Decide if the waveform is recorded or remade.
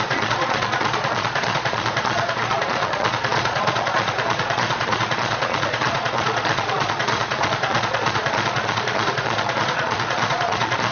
remade